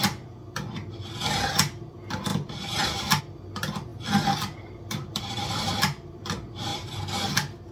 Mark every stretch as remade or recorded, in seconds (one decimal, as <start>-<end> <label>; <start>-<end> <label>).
0.0-2.3 recorded; 2.3-3.2 remade; 3.2-3.9 recorded; 3.9-6.2 remade; 6.2-6.7 recorded; 6.7-7.3 remade; 7.3-7.7 recorded